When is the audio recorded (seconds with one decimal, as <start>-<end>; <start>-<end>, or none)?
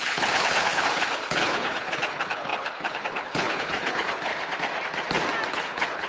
4.3-5.5